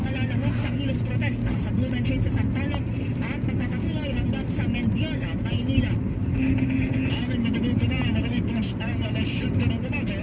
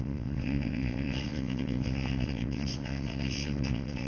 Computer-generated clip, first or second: second